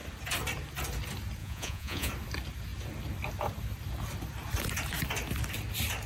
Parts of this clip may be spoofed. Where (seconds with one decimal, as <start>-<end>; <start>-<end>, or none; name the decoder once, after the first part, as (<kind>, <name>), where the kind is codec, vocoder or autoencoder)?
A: 1.4-2.1 (vocoder, Vocos)